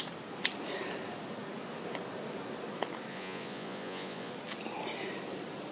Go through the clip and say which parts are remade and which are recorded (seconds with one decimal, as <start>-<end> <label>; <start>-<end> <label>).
0.0-3.1 recorded; 3.1-4.3 remade; 4.3-5.7 recorded